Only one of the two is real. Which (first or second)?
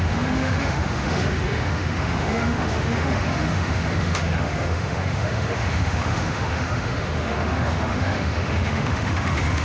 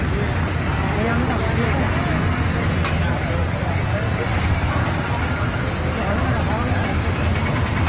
second